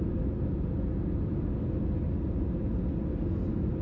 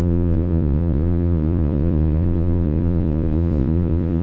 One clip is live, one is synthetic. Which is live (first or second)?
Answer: first